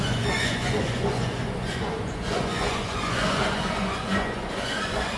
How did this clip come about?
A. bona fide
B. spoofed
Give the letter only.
B